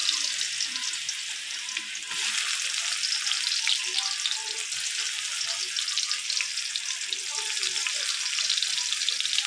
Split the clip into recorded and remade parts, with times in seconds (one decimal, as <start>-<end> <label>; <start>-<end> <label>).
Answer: 0.0-9.5 recorded